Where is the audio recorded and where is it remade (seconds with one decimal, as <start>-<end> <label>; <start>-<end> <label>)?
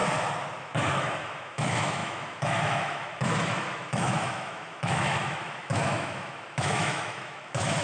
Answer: 0.0-0.6 recorded; 0.6-7.8 remade